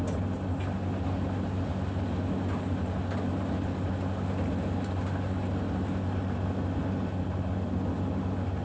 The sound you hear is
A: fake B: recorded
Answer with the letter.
B